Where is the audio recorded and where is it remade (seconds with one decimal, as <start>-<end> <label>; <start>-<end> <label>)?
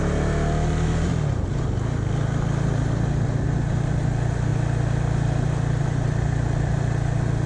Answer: 0.0-7.5 recorded